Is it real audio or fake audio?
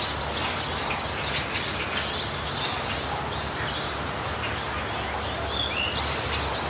real